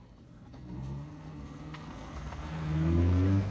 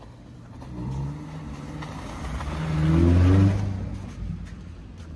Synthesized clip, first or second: first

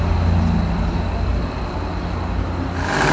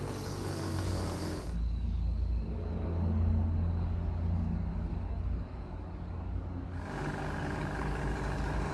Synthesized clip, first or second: second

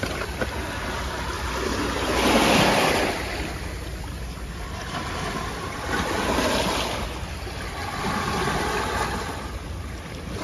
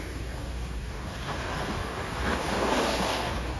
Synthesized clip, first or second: second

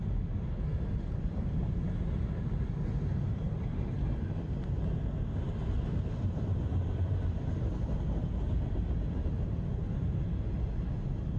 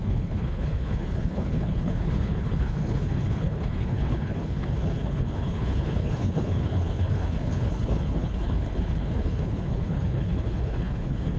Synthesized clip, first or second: second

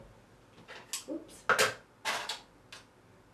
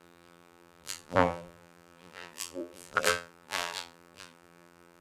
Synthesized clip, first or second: second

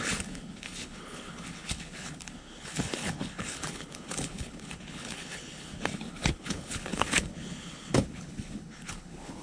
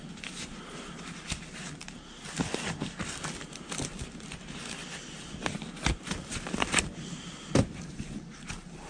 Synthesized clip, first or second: first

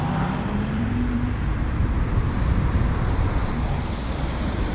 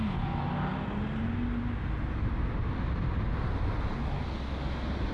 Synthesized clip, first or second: first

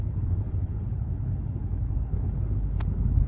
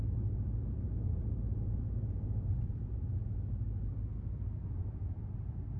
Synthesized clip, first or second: first